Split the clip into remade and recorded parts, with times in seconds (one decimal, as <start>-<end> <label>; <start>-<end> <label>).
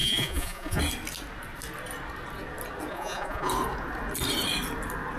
0.0-0.8 remade; 0.8-2.9 recorded; 2.9-3.5 remade; 3.5-5.2 recorded